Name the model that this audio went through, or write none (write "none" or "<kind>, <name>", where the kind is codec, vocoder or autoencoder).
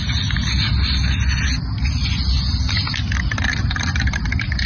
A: none